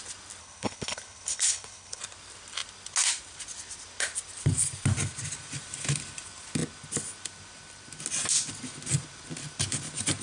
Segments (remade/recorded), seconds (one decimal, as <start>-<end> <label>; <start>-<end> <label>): 0.0-0.4 recorded; 0.4-2.0 remade; 2.0-10.2 recorded